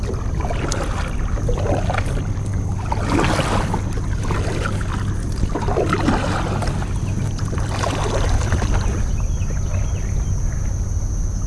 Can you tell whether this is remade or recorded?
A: recorded